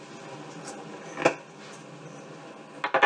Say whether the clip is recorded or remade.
recorded